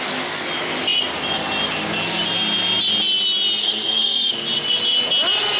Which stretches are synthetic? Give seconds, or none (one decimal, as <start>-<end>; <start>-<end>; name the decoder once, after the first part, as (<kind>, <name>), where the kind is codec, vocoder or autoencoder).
3.6-4.3 (codec, SNAC)